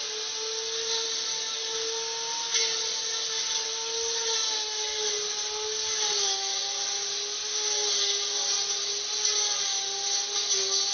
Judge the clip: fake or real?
real